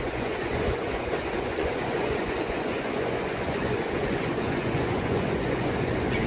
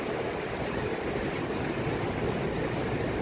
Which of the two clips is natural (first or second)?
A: second